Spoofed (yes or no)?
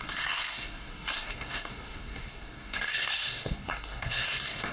yes